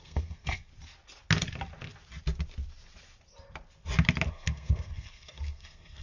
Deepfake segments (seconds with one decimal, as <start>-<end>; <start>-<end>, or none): 0.0-0.7; 4.3-6.0